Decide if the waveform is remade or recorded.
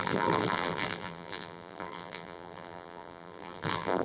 remade